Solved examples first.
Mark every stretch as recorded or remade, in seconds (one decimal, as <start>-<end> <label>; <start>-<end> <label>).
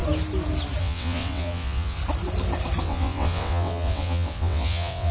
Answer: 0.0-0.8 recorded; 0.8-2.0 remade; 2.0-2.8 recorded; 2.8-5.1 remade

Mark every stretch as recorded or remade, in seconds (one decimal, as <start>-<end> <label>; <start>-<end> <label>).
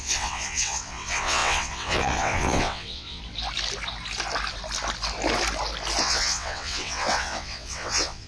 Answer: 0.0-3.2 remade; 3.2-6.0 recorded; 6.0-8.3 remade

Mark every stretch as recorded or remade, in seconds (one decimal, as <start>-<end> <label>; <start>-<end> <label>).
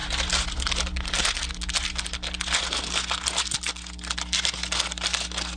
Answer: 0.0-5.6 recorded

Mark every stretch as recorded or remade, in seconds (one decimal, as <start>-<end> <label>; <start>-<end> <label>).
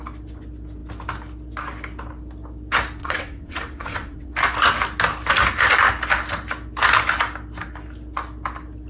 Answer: 0.0-3.0 recorded; 3.0-4.3 remade; 4.3-8.9 recorded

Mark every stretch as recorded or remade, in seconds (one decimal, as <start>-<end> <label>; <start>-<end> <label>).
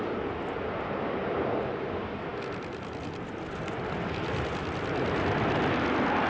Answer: 0.0-6.3 recorded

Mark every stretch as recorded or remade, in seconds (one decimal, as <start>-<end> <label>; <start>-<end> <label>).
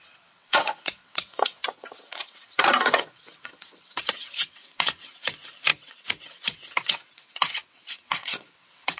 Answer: 0.0-9.0 remade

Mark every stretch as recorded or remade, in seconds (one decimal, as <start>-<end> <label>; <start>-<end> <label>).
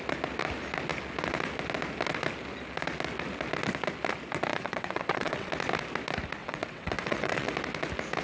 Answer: 0.0-4.5 recorded; 4.5-5.5 remade; 5.5-6.4 recorded; 6.4-7.5 remade; 7.5-8.2 recorded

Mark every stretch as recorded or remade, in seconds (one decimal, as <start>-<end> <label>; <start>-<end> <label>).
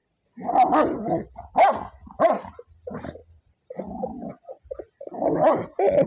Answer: 0.0-6.1 recorded